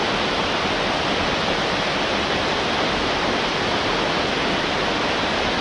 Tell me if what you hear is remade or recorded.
recorded